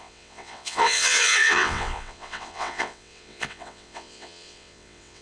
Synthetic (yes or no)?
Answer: yes